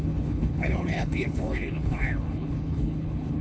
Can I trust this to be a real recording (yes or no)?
no